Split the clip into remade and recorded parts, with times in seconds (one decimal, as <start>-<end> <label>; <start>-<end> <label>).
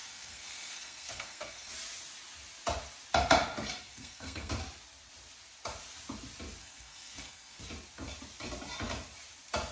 0.0-1.7 remade; 1.7-3.9 recorded; 3.9-4.5 remade; 4.5-6.6 recorded; 6.6-7.6 remade; 7.6-9.7 recorded